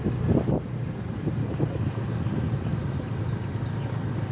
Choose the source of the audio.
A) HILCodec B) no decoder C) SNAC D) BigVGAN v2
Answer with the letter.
B